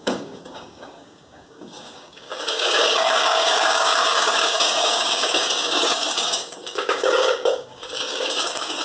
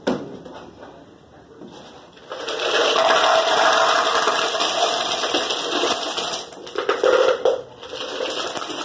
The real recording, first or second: second